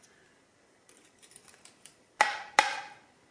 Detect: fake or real real